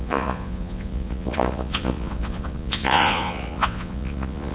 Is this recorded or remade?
remade